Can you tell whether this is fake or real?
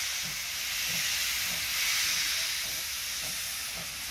real